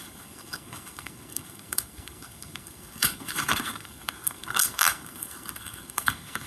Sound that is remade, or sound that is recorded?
remade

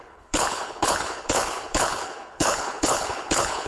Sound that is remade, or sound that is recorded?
remade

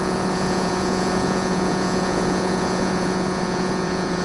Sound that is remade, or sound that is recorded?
remade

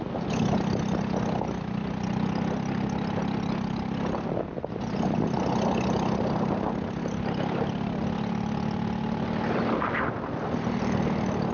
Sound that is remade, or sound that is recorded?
recorded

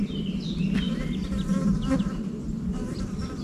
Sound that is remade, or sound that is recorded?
recorded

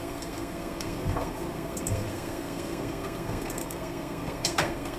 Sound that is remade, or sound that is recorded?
remade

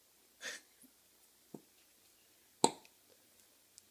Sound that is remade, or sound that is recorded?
recorded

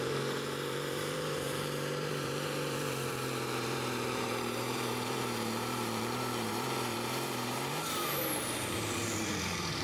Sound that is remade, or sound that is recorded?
remade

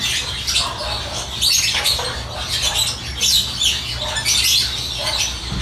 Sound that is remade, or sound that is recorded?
recorded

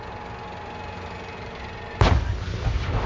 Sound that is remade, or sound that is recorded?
recorded